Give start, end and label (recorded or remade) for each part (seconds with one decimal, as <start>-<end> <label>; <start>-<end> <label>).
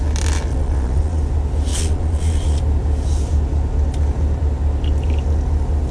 0.0-0.5 recorded; 0.5-1.2 remade; 1.2-1.7 recorded; 1.7-2.6 remade; 2.6-5.9 recorded